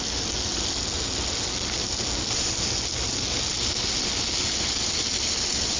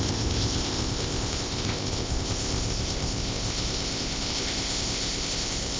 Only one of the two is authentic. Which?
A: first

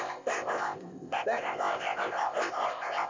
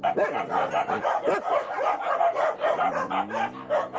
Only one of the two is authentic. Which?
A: second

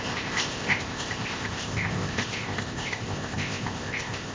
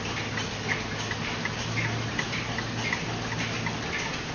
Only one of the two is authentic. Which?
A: second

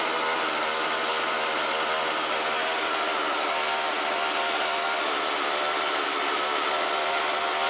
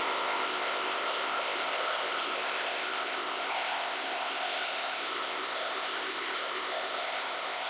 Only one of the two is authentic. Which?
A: first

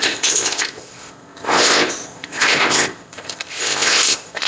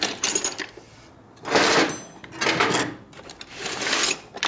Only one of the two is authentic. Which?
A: second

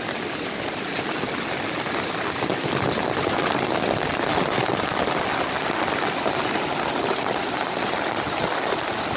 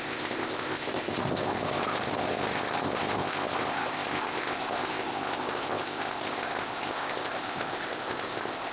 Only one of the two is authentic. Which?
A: first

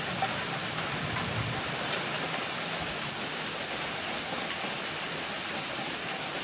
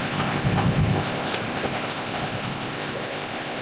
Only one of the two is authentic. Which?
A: first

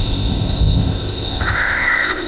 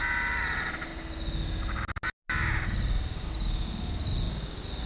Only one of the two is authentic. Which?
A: second